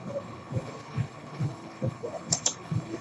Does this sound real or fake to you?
fake